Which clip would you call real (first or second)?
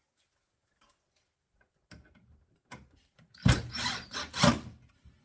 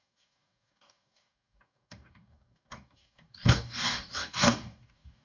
first